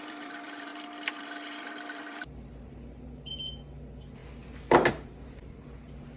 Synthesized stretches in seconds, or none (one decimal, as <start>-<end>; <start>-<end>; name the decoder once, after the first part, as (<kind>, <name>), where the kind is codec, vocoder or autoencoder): 0.0-6.2 (vocoder, BigVGAN v2)